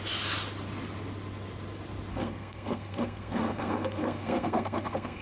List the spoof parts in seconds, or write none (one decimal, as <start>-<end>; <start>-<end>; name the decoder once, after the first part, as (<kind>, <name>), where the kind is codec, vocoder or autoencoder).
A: 2.1-5.2 (codec, SNAC)